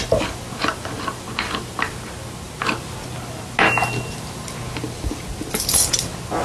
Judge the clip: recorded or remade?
recorded